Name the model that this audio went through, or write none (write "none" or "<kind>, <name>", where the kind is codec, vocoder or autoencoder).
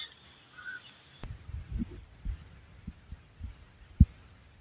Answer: none